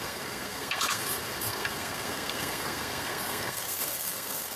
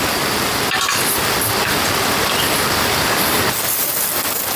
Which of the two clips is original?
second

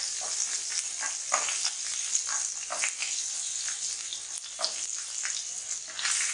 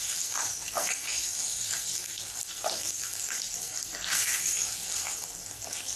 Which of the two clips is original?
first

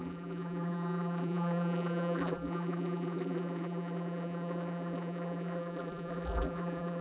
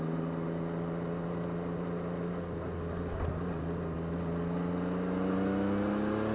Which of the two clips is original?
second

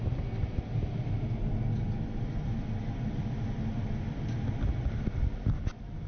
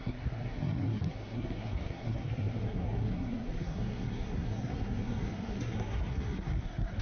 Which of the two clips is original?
first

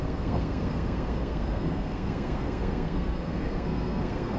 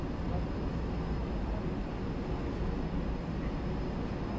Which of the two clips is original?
second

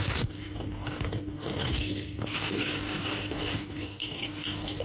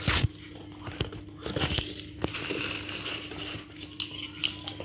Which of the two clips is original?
second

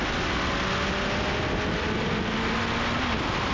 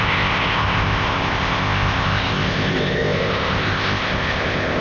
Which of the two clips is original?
first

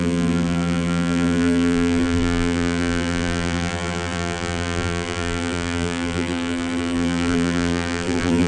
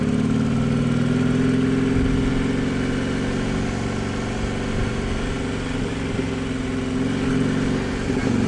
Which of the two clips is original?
second